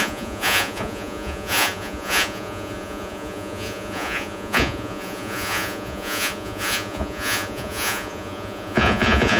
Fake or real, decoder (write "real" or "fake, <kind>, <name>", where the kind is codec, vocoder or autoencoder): fake, vocoder, Vocos